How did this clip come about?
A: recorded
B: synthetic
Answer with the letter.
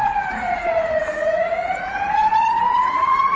B